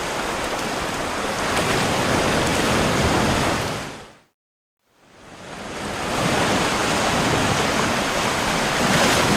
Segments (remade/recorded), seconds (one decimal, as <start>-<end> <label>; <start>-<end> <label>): 0.0-9.4 recorded